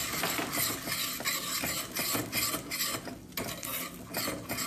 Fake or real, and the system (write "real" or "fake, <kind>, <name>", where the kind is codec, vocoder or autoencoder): real